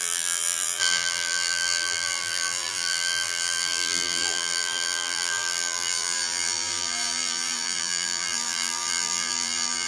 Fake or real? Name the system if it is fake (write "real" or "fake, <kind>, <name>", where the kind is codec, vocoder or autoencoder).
fake, vocoder, BigVGAN v2